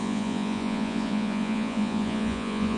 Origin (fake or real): fake